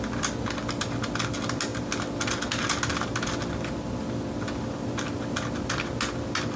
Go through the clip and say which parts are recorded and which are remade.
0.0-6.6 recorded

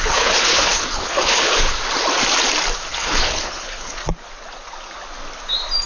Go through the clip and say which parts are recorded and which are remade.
0.0-1.8 remade; 1.8-2.9 recorded; 2.9-4.0 remade; 4.0-5.9 recorded

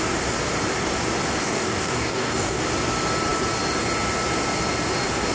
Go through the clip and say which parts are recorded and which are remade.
0.0-1.4 recorded; 1.4-2.6 remade; 2.6-5.3 recorded

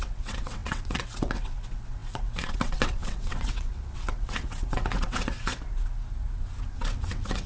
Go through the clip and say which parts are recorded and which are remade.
0.0-5.5 remade; 5.5-6.6 recorded; 6.6-7.5 remade

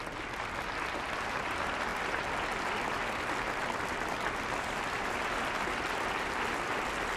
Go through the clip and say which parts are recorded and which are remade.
0.0-7.2 recorded

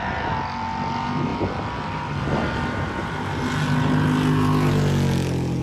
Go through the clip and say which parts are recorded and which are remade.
0.0-5.6 recorded

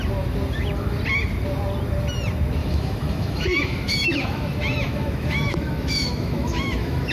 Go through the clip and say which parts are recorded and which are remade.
0.0-2.6 recorded; 2.6-7.1 remade